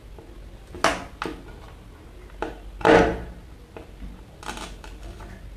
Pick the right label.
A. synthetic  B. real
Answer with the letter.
B